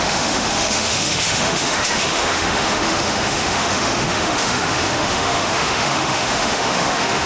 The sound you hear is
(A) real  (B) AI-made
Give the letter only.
B